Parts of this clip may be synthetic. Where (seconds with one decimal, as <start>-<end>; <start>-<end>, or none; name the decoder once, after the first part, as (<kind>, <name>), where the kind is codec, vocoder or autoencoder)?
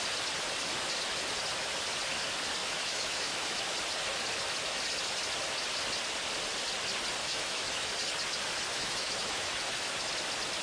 2.6-3.6 (autoencoder, DAC-VAE); 7.2-7.9; 8.7-10.1